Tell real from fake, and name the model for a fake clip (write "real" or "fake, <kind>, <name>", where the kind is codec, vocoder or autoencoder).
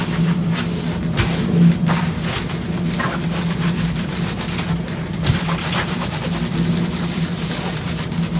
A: real